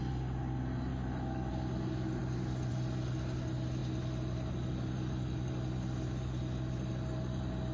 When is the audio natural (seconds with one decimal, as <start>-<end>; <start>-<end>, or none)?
0.0-0.9; 1.5-7.7